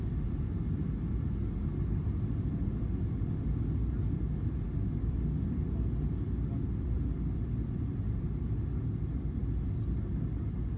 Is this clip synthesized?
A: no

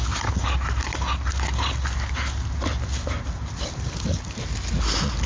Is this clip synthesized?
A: no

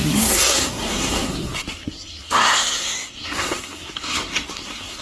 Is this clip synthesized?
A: yes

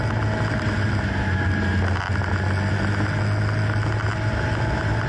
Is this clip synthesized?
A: no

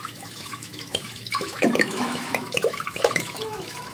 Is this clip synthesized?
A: yes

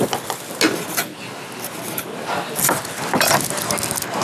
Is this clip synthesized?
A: no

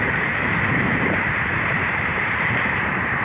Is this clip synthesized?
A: yes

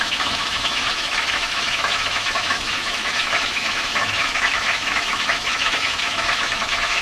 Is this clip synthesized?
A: yes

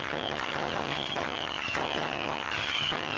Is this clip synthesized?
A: yes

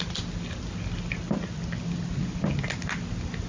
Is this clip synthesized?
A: no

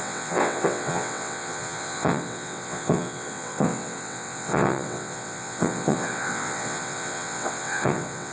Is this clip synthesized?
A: yes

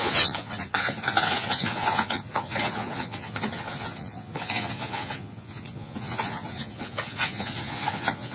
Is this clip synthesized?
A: yes